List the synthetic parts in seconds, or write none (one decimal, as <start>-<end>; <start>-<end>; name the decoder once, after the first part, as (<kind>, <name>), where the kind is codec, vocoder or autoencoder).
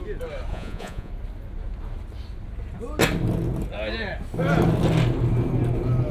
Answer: 0.5-1.1 (vocoder, Vocos)